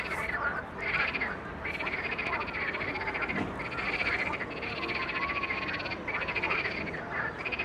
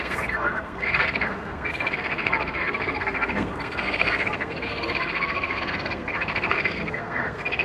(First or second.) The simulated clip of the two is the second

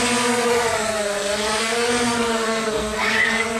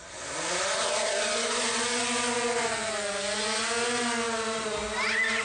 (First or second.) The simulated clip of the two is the first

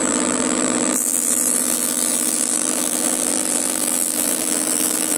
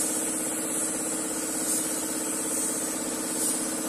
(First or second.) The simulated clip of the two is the first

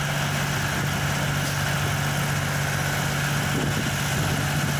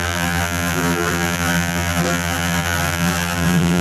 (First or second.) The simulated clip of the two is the second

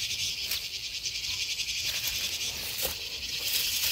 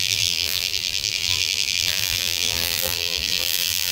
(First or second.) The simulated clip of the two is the second